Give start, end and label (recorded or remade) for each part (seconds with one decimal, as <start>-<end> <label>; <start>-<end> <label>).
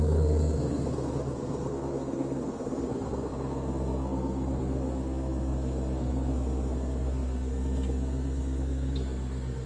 0.0-9.7 remade